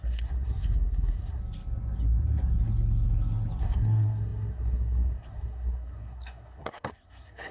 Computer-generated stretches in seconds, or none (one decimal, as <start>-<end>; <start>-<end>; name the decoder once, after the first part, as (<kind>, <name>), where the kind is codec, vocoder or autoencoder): 0.0-1.4 (codec, SNAC); 3.6-7.5